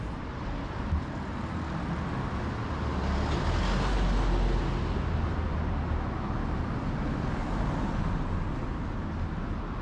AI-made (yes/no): no